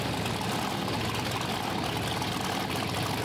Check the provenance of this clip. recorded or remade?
recorded